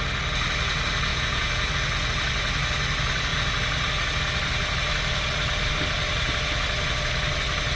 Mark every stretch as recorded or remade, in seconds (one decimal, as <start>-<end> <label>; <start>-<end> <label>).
0.0-1.1 recorded; 1.1-1.7 remade; 1.7-7.8 recorded